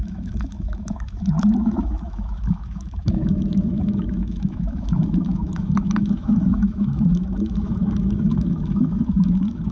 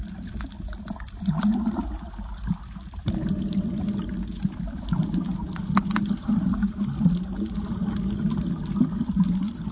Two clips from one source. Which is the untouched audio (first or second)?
second